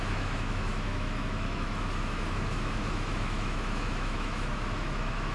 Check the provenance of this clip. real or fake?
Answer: fake